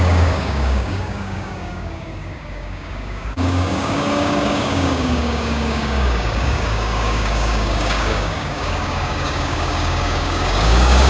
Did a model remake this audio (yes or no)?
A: yes